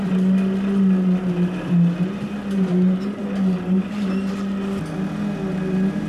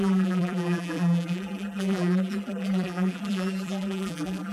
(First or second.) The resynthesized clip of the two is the second